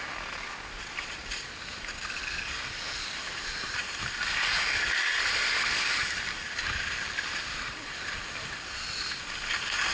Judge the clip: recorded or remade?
recorded